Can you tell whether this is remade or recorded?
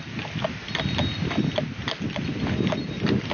recorded